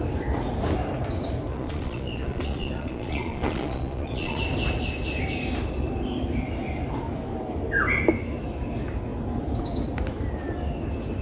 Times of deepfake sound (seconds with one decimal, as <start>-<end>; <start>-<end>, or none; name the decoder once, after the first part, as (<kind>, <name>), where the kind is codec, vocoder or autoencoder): 1.5-4.4 (vocoder, Vocos)